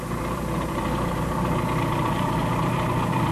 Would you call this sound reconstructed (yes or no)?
yes